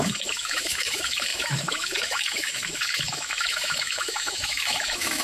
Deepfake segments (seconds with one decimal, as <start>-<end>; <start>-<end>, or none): 0.0-5.2